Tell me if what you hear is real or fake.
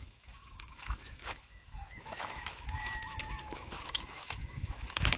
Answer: fake